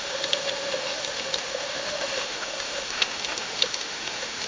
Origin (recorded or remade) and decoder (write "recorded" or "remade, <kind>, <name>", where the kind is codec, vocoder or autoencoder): remade, autoencoder, DAC-VAE